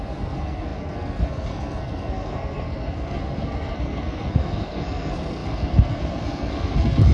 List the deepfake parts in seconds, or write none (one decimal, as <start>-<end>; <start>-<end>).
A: 0.0-7.1